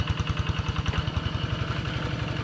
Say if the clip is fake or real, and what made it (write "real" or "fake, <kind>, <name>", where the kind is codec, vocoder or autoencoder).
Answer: real